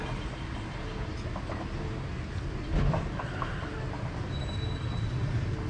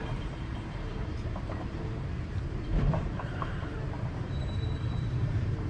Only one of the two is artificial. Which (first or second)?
second